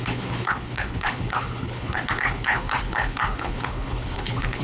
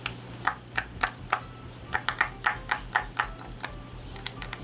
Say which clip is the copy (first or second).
first